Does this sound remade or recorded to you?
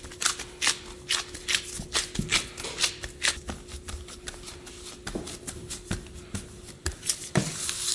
recorded